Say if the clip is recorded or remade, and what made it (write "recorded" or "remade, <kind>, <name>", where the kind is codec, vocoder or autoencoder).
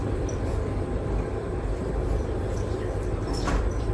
remade, vocoder, BigVGAN v2